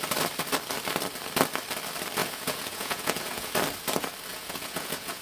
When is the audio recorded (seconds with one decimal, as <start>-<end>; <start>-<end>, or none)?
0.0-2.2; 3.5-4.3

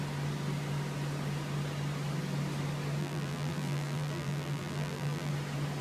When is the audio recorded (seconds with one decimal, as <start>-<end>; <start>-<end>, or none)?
0.0-3.0; 5.3-5.8

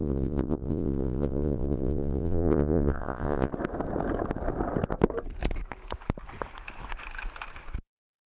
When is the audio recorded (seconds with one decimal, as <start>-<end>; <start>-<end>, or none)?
3.5-8.3

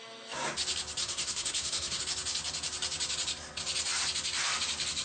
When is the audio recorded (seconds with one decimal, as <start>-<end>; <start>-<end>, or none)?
0.0-1.0; 2.0-5.0

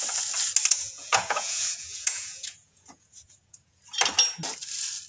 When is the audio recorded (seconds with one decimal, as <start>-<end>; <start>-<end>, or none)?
0.0-0.7; 3.8-5.1

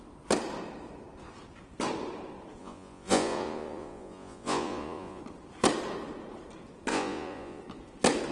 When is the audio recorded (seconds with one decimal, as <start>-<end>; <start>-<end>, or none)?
0.0-2.6; 5.2-6.9; 7.6-8.3

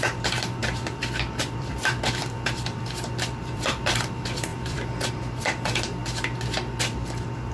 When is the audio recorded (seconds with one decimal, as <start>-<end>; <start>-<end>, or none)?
6.0-7.5